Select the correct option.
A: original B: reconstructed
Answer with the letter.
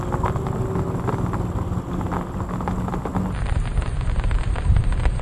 A